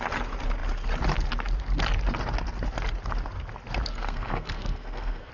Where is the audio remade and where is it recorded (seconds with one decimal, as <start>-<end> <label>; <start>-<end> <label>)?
0.0-3.9 recorded; 3.9-5.3 remade

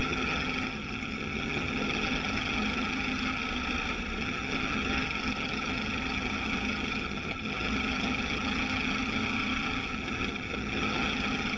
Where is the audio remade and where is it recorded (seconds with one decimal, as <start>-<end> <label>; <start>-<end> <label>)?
0.0-3.4 remade; 3.4-4.2 recorded; 4.2-11.6 remade